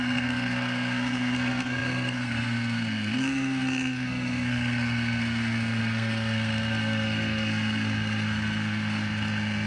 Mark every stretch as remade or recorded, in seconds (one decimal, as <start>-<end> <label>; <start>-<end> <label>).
0.0-9.7 remade